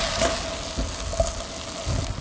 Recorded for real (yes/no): yes